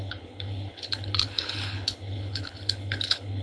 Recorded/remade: remade